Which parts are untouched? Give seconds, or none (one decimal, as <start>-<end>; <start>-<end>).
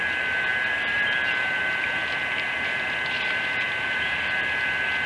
none